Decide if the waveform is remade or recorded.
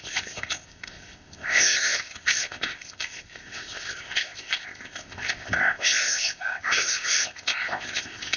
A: remade